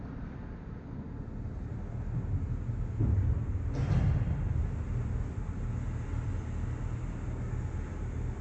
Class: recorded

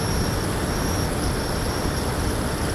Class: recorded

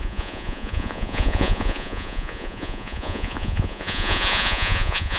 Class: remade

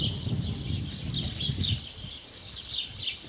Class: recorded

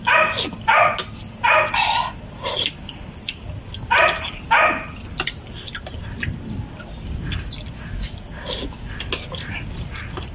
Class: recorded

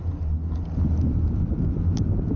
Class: recorded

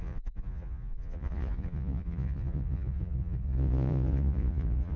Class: remade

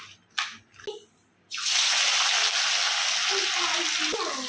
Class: recorded